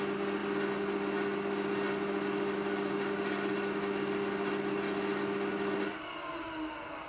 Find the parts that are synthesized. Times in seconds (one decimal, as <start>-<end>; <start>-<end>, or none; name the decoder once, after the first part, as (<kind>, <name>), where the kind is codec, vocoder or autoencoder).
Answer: none